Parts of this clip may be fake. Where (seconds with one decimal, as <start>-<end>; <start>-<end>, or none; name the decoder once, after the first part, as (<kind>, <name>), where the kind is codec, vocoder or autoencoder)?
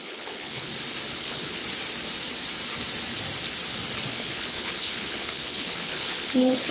0.0-0.7 (codec, HILCodec); 1.2-1.6; 4.1-6.7